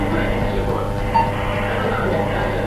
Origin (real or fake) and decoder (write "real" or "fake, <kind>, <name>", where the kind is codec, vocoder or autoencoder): real